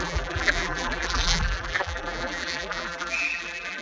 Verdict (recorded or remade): remade